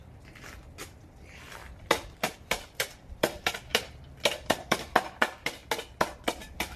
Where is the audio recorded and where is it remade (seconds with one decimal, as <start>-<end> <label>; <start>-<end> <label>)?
0.0-3.7 remade; 3.7-4.4 recorded; 4.4-5.6 remade; 5.6-6.8 recorded